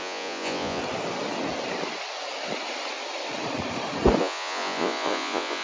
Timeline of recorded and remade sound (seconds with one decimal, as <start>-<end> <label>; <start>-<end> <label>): 0.0-0.8 remade; 0.8-4.2 recorded; 4.2-5.6 remade